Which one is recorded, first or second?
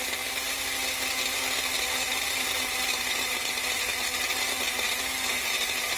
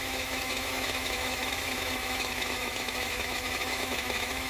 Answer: first